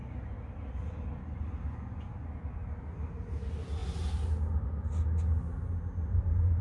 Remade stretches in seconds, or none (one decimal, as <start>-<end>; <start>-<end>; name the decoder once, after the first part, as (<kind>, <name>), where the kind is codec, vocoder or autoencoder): none